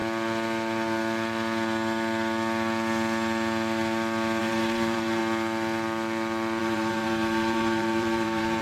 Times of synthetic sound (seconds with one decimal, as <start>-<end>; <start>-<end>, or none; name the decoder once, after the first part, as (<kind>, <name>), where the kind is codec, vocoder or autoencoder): 4.4-5.2 (vocoder, BigVGAN v2); 6.6-8.6